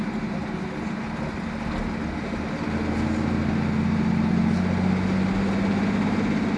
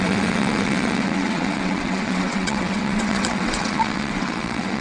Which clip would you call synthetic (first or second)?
second